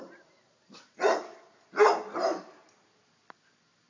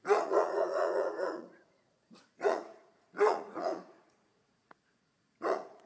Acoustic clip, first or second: first